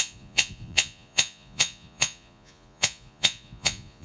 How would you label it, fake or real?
fake